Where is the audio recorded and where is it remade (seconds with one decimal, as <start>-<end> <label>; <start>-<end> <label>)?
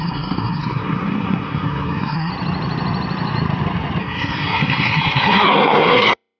0.0-2.3 remade; 2.3-4.0 recorded; 4.0-6.4 remade